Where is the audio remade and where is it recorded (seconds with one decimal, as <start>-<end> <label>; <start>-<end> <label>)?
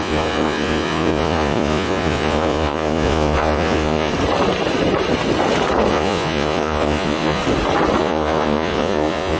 0.0-4.1 remade; 4.1-5.9 recorded; 5.9-7.4 remade; 7.4-8.0 recorded; 8.0-9.4 remade